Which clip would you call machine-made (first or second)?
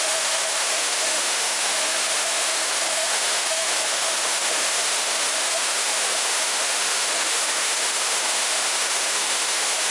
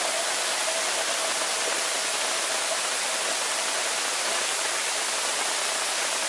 first